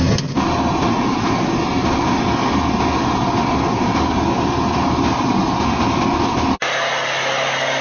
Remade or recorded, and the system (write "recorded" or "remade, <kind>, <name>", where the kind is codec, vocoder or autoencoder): recorded